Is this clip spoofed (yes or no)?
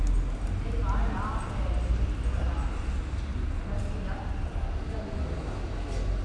no